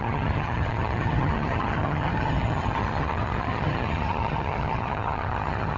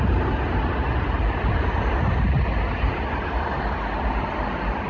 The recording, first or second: second